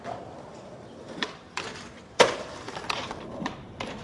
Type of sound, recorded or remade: remade